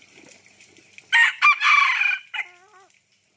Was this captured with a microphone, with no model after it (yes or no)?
yes